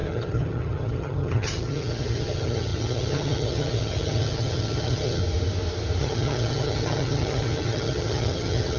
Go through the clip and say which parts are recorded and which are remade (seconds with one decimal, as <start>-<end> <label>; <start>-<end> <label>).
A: 0.0-5.2 remade; 5.2-6.0 recorded; 6.0-8.8 remade